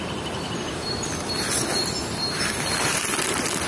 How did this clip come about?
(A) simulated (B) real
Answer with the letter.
B